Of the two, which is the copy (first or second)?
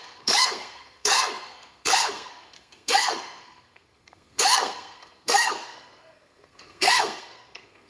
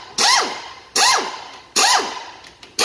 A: first